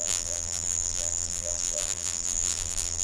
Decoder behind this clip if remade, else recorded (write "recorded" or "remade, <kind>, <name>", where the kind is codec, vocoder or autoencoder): remade, vocoder, BigVGAN v2